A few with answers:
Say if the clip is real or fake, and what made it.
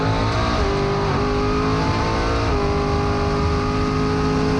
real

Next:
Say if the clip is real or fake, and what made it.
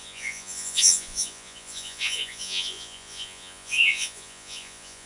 fake, vocoder, Vocos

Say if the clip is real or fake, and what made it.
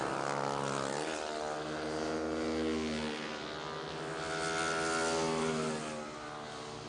real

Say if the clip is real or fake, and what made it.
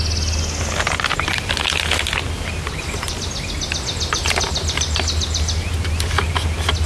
real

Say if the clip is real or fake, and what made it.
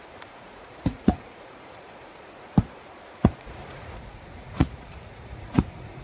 fake, vocoder, Vocos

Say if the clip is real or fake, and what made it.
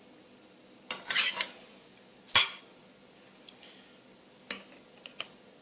real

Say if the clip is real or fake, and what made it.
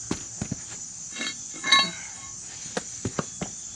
real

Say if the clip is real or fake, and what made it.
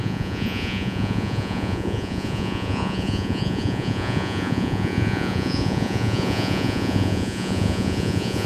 fake, vocoder, Vocos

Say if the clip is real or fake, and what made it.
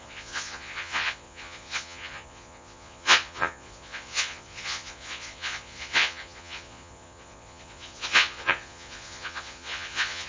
fake, vocoder, Vocos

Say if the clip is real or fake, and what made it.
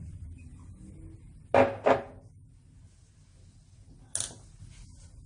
real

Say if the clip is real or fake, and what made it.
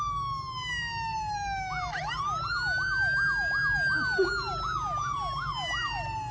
real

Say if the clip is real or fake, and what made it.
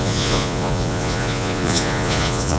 fake, vocoder, Vocos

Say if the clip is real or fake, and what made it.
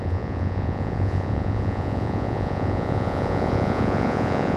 fake, vocoder, Vocos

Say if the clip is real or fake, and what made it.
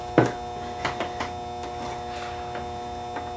real